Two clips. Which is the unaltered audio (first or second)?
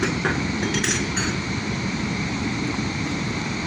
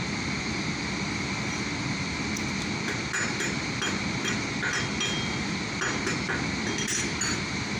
second